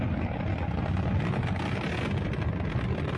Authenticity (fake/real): real